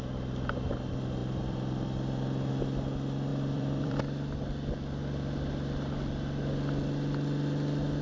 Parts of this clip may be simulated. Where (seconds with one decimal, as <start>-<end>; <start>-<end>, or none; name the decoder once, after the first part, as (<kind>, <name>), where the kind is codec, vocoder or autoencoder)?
1.2-2.5 (vocoder, BigVGAN v2); 3.3-4.0